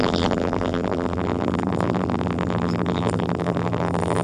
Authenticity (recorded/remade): remade